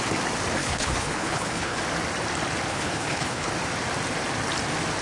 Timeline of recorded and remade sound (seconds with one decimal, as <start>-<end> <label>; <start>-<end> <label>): 0.0-0.6 recorded; 0.6-1.8 remade; 1.8-2.7 recorded; 2.7-3.5 remade; 3.5-5.0 recorded